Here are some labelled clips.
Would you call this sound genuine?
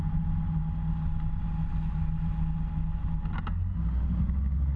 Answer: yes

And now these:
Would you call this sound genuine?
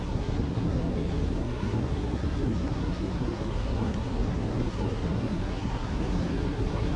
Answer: no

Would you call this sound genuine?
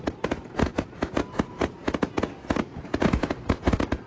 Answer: yes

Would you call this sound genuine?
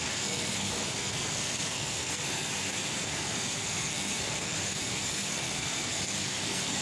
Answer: no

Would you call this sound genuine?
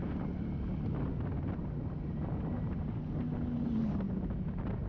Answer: yes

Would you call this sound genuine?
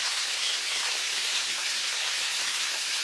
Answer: no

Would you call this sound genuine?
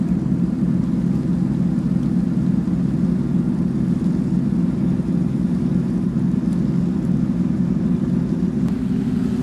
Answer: yes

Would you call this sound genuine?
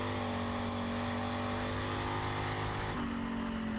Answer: yes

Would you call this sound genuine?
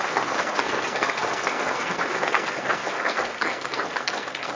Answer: no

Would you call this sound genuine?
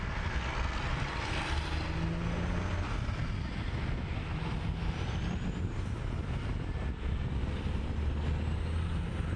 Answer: yes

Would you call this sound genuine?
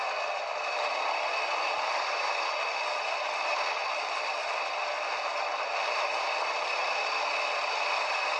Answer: yes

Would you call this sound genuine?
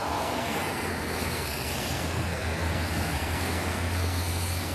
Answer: no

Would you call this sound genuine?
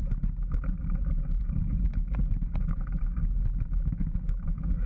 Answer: yes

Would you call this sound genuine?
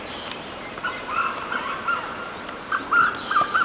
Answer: yes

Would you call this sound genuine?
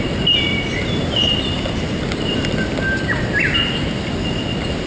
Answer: yes